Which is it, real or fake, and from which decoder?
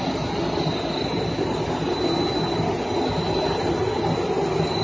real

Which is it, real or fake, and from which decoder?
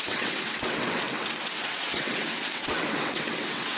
fake, vocoder, WaveNeXt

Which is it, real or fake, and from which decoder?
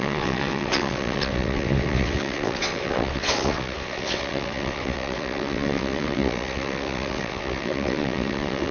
fake, vocoder, WaveNeXt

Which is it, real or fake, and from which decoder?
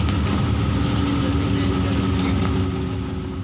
real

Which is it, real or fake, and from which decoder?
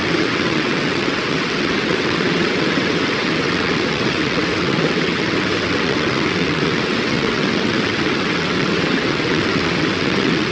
fake, vocoder, WaveNeXt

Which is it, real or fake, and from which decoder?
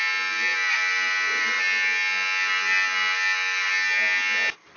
real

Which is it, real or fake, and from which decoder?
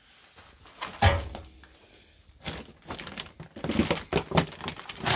real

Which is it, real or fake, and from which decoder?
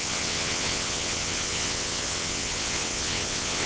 fake, vocoder, WaveNeXt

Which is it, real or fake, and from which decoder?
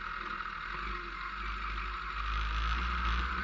real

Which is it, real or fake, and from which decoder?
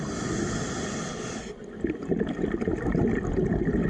real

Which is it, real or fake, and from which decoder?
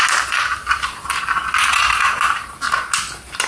real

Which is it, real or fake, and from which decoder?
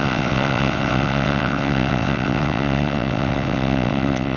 fake, vocoder, WaveNeXt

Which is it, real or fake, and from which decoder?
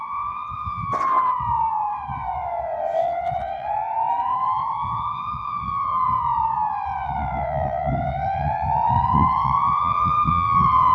fake, vocoder, WaveNeXt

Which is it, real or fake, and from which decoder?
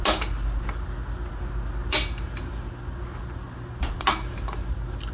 real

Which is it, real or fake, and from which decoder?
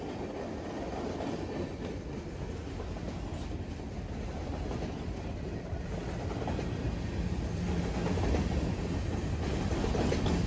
real